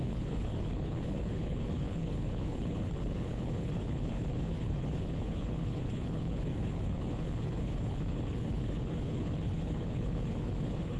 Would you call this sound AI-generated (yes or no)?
yes